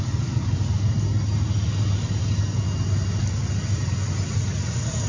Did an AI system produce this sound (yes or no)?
no